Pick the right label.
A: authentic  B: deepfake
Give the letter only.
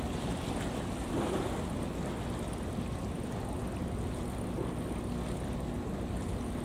A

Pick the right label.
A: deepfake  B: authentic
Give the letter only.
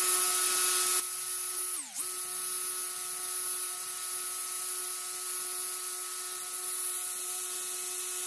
B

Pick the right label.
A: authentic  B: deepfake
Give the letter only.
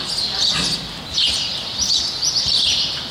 A